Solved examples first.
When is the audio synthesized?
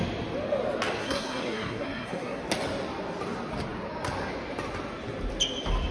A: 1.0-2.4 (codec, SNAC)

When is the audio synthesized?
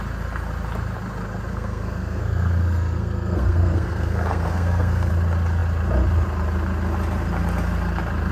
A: 1.5-5.1 (codec, SNAC)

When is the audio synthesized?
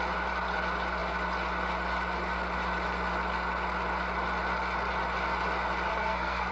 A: 5.9-6.5 (codec, SNAC)